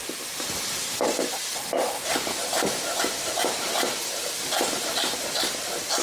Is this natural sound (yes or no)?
no